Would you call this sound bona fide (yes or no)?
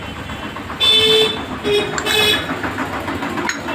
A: yes